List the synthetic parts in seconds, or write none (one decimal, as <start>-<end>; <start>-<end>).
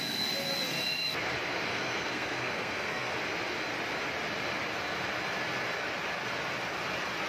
1.7-3.1